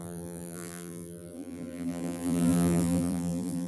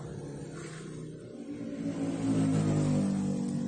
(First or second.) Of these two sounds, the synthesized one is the first